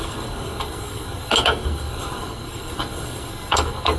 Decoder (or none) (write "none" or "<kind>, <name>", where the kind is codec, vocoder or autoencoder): codec, SNAC